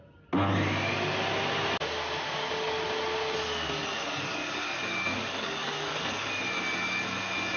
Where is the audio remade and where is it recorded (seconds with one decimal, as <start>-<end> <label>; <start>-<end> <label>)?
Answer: 0.0-5.1 recorded; 5.1-6.3 remade; 6.3-7.6 recorded